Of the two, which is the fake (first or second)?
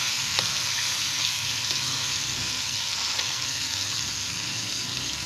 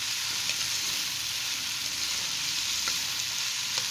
first